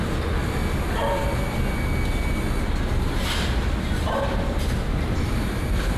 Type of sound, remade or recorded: recorded